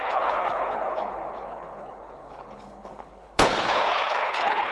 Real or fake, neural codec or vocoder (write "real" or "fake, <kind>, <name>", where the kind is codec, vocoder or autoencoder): fake, codec, HILCodec